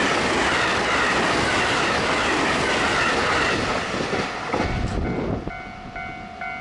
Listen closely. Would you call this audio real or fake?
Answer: real